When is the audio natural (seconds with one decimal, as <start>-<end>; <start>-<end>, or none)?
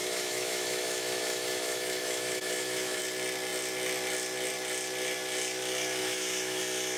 3.0-6.0; 6.6-7.0